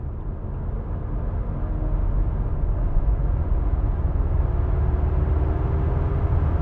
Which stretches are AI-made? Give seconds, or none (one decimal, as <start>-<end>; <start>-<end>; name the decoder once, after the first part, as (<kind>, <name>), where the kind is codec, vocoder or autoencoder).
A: 2.5-4.4 (vocoder, Vocos)